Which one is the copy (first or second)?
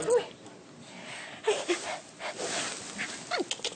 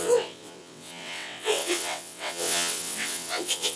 second